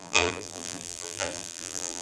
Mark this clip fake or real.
fake